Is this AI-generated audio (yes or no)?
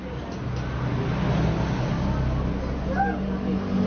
no